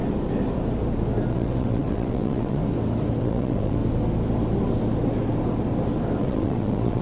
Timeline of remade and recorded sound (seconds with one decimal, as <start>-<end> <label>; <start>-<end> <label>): 0.0-1.3 recorded; 1.3-2.6 remade; 2.6-3.2 recorded; 3.2-3.8 remade; 3.8-6.2 recorded; 6.2-7.0 remade